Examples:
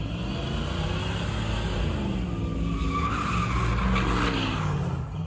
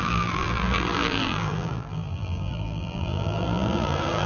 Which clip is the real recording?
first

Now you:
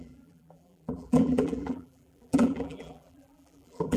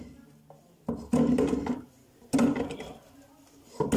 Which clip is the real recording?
second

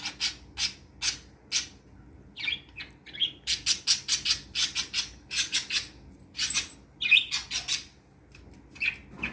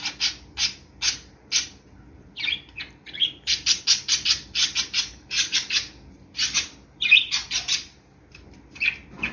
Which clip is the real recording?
first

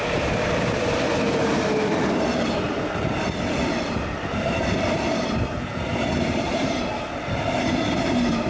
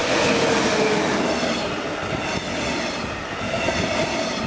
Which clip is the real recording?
second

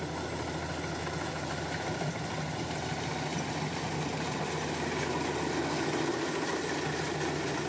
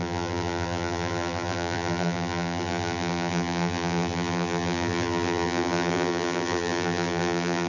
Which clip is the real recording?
first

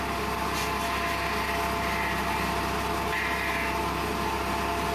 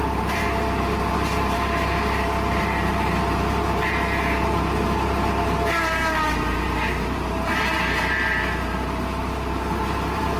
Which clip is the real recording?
first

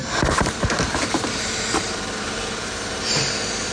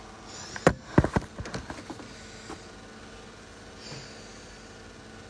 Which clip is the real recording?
second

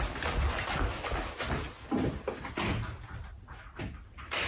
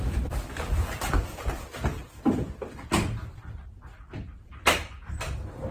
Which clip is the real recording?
first